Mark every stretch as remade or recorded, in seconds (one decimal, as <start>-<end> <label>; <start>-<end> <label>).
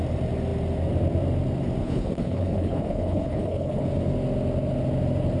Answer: 0.0-1.8 recorded; 1.8-3.8 remade; 3.8-5.4 recorded